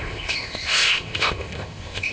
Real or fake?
fake